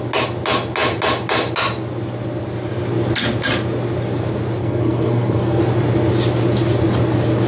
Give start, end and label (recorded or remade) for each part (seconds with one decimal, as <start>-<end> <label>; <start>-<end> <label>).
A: 0.0-4.6 recorded; 4.6-5.6 remade; 5.6-7.5 recorded